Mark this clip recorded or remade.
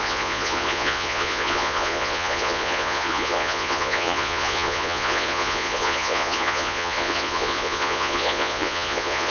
remade